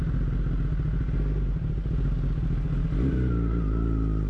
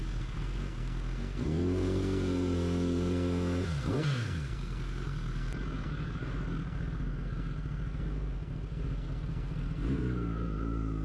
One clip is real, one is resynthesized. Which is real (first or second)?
first